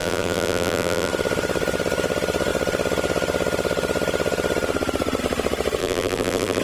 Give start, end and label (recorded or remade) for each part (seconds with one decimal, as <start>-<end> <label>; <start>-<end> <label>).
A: 0.0-1.1 remade; 1.1-5.8 recorded; 5.8-6.6 remade